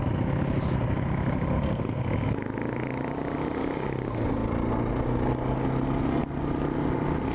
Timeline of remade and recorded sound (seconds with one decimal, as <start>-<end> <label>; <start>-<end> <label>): 0.0-7.3 recorded